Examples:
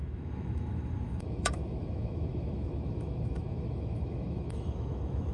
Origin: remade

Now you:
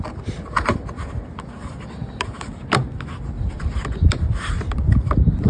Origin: recorded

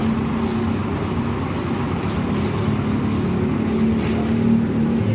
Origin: recorded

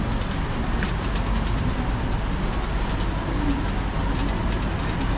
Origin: recorded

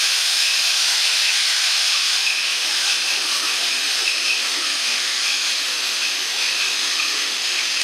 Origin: remade